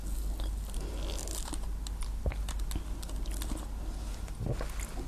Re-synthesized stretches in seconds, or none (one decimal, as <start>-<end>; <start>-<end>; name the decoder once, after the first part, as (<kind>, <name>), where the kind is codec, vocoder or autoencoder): none